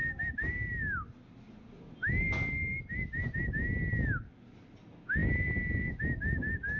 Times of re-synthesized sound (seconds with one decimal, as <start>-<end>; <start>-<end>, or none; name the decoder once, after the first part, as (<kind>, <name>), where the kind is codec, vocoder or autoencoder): none